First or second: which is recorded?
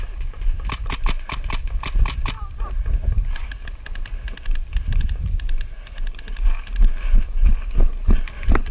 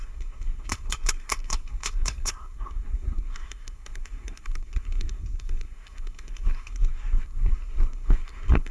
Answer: first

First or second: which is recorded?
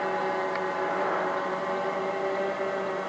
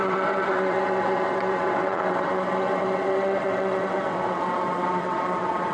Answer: first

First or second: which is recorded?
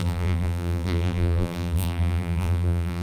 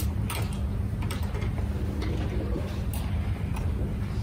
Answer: second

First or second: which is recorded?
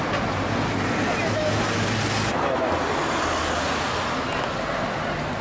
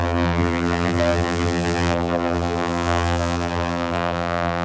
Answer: first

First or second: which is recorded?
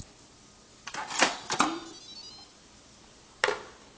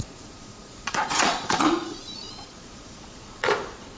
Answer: first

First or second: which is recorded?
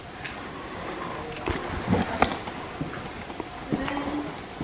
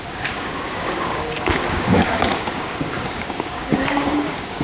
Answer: first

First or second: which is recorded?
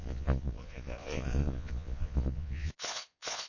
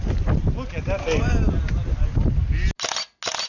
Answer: second